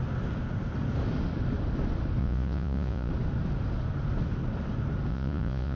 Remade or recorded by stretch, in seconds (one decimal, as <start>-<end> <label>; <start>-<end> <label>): 0.0-2.2 recorded; 2.2-3.1 remade; 3.1-5.1 recorded; 5.1-5.8 remade